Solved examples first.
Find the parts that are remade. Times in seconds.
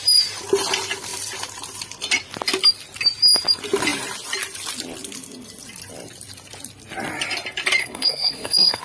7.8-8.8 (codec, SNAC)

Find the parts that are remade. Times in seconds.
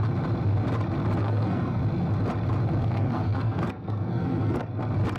1.2-1.8 (codec, SNAC); 2.8-4.6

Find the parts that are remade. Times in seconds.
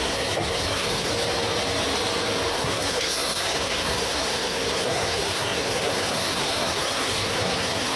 0.0-1.1 (codec, SNAC); 2.5-8.0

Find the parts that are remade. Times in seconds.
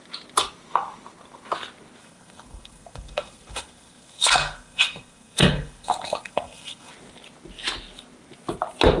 2.0-6.9 (codec, SNAC)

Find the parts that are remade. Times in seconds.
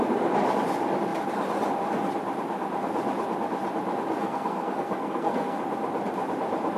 4.2-5.6 (codec, SNAC)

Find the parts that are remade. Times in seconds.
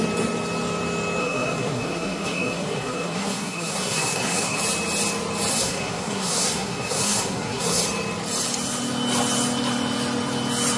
1.2-4.6 (codec, SNAC); 5.5-7.8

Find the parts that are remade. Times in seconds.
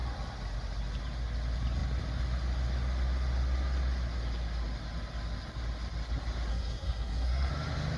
6.5-7.5 (codec, SNAC)